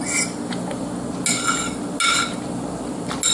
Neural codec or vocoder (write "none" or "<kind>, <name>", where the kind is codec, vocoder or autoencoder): none